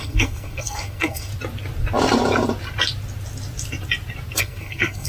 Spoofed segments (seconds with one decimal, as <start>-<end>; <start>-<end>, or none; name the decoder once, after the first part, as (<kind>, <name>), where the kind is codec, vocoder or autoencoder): 0.0-1.3 (codec, SNAC); 4.4-5.1